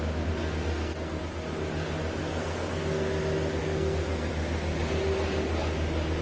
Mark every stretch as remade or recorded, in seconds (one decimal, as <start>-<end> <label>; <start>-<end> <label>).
0.0-0.4 recorded; 0.4-1.2 remade; 1.2-2.2 recorded; 2.2-3.2 remade; 3.2-3.6 recorded; 3.6-4.3 remade; 4.3-6.2 recorded